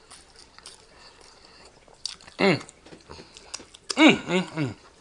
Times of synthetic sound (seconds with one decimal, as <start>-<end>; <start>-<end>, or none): none